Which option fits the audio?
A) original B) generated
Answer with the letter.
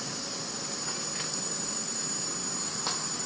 A